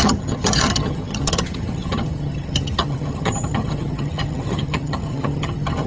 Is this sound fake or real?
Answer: fake